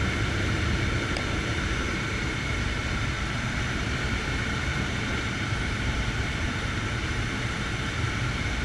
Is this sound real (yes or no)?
no